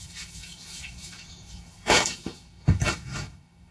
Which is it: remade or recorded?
remade